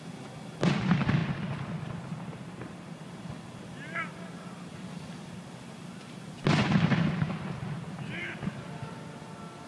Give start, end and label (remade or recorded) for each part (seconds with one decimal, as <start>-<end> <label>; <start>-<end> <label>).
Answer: 0.0-9.7 recorded